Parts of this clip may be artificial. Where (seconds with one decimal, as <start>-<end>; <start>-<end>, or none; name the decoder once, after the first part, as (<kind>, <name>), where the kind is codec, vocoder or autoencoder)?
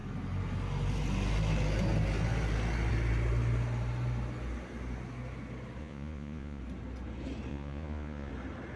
5.8-6.6 (vocoder, Vocos); 7.5-8.3